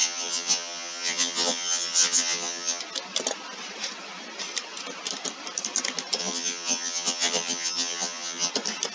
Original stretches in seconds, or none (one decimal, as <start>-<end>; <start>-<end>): 2.8-6.2; 8.5-8.9